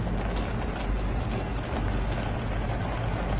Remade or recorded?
recorded